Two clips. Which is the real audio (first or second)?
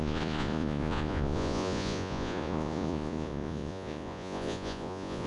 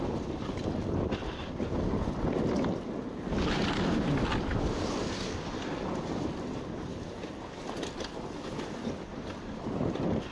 second